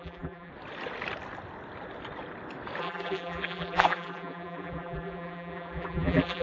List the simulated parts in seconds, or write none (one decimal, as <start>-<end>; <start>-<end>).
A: 0.0-0.5; 2.8-6.4